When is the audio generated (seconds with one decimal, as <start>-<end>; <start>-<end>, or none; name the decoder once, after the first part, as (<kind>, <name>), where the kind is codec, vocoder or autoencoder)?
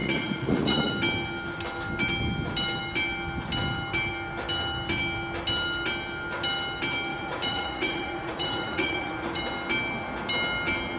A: 0.0-0.9 (vocoder, Vocos); 7.1-9.4